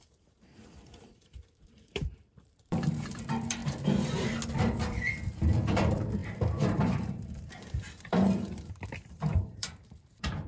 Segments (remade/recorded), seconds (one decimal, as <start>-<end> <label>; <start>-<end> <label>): 0.0-3.6 remade; 3.6-4.6 recorded; 4.6-10.5 remade